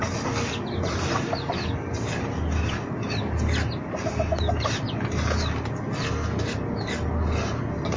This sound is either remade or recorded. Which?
recorded